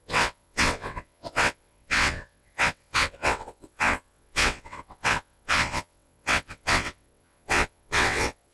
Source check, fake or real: fake